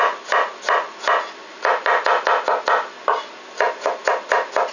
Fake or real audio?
real